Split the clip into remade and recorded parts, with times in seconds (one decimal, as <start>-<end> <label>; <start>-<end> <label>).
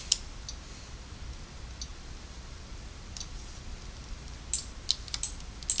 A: 0.0-1.9 recorded; 1.9-4.4 remade; 4.4-5.8 recorded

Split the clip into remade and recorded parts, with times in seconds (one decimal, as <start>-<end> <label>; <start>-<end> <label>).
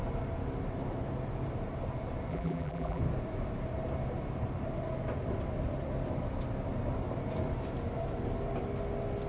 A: 0.0-2.3 recorded; 2.3-3.0 remade; 3.0-9.3 recorded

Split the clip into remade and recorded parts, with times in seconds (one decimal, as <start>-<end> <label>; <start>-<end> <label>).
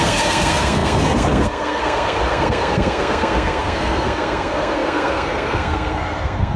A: 0.0-6.6 remade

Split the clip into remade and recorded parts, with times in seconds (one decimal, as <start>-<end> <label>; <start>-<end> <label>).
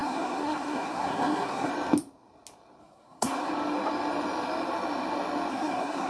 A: 0.0-1.7 remade; 1.7-2.8 recorded; 2.8-3.5 remade; 3.5-5.5 recorded; 5.5-6.1 remade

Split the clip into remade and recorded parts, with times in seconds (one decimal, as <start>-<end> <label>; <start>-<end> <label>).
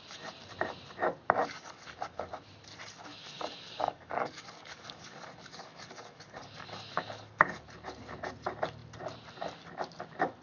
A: 0.0-1.4 recorded; 1.4-2.3 remade; 2.3-3.1 recorded; 3.1-7.6 remade; 7.6-10.4 recorded